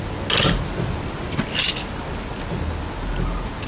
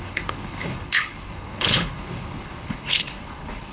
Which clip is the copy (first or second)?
second